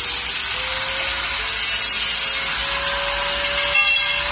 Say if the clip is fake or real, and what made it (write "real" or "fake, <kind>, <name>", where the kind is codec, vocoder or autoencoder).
real